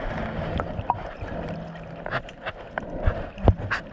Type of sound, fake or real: real